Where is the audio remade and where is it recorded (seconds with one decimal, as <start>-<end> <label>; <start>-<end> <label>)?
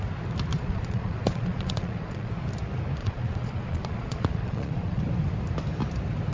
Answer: 0.0-0.5 recorded; 0.5-2.3 remade; 2.3-3.0 recorded; 3.0-5.0 remade; 5.0-6.3 recorded